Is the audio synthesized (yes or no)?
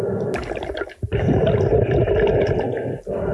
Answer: no